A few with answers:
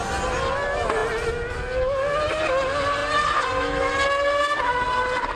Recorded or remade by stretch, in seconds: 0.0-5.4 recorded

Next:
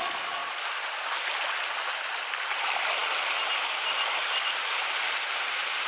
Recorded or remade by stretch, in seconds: 0.0-0.4 remade; 0.4-2.0 recorded; 2.0-5.9 remade

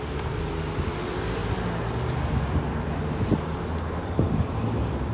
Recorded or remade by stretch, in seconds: 0.0-1.4 remade; 1.4-2.5 recorded; 2.5-5.1 remade

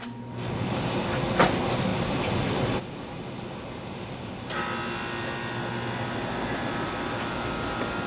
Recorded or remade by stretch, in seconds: 0.0-8.1 recorded

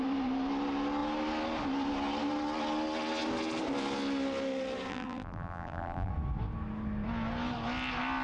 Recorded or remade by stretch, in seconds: 0.0-4.9 recorded; 4.9-6.1 remade; 6.1-8.2 recorded

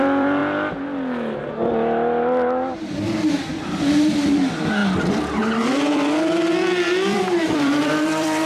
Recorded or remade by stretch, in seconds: 0.0-0.4 remade; 0.4-3.3 recorded; 3.3-8.5 remade

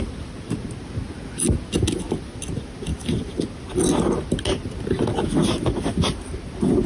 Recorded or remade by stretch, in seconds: 0.0-2.9 recorded; 2.9-3.4 remade; 3.4-6.9 recorded

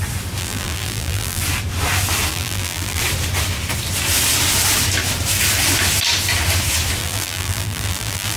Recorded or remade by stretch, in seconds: 0.0-0.4 recorded; 0.4-1.4 remade; 1.4-2.3 recorded; 2.3-3.0 remade; 3.0-7.0 recorded; 7.0-8.4 remade